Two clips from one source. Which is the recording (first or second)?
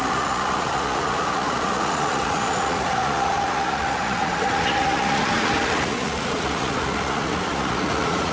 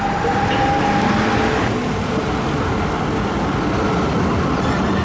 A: second